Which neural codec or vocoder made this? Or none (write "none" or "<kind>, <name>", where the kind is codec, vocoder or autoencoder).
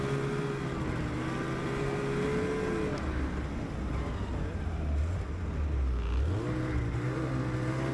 none